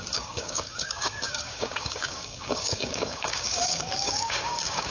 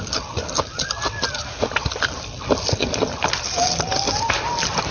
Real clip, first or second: second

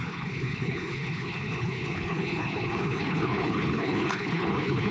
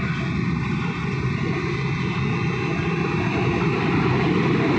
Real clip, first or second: second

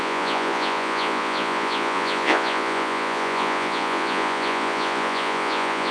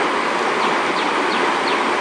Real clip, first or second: second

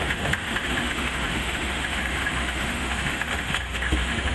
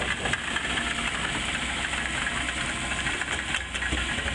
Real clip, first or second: second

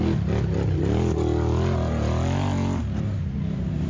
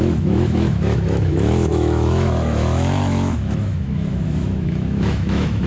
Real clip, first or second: first